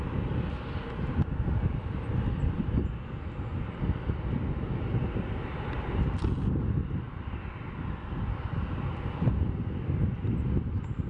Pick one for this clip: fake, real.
real